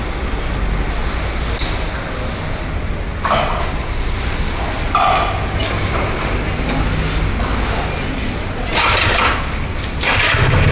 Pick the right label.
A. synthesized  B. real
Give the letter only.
B